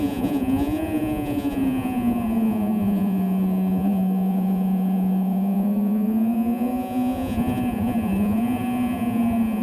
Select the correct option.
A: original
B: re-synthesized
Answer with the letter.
B